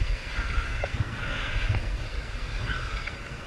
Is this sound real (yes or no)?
no